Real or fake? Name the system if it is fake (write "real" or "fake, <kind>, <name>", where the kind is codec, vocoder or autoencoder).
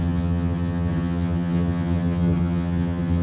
fake, vocoder, HiFi-GAN